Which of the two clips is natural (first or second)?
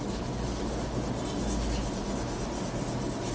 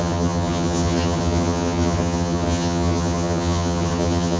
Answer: first